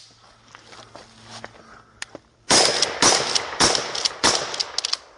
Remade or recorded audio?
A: recorded